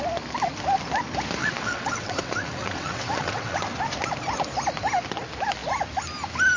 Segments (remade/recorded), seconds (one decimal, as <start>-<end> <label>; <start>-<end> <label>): 0.0-1.4 recorded; 1.4-3.6 remade; 3.6-6.6 recorded